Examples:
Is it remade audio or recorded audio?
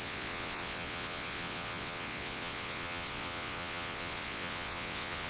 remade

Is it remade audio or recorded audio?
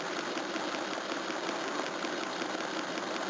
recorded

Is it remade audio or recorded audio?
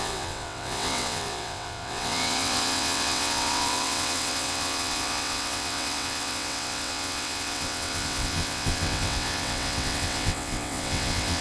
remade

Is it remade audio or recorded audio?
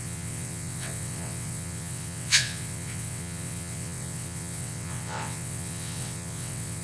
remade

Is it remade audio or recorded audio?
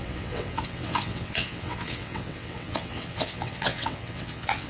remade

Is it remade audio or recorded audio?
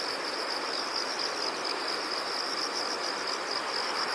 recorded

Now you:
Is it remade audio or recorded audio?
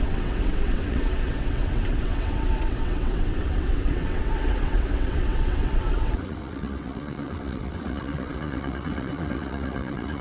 remade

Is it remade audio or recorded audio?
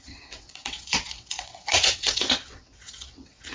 remade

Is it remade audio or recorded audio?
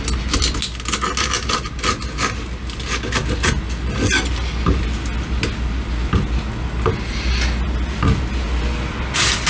recorded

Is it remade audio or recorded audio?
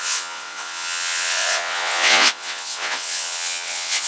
remade